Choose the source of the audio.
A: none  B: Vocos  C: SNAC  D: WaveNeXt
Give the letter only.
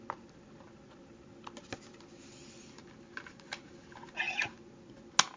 A